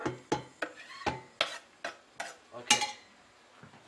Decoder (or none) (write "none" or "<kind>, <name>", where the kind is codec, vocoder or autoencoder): none